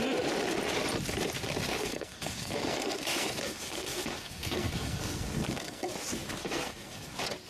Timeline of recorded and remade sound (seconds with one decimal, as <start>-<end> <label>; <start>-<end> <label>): 0.0-1.8 recorded; 1.8-5.9 remade; 5.9-6.4 recorded; 6.4-7.1 remade; 7.1-7.5 recorded